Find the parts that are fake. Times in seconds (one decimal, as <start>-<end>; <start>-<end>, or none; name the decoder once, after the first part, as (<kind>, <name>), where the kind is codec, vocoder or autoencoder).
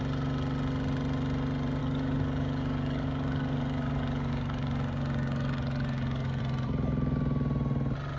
1.8-6.4 (codec, DAC)